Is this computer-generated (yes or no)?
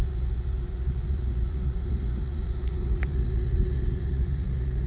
yes